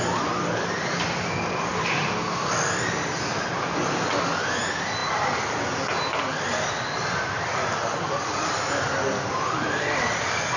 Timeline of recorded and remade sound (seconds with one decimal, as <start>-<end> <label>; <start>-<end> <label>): 0.0-1.7 recorded; 1.7-2.5 remade; 2.5-5.0 recorded; 5.0-9.8 remade; 9.8-10.6 recorded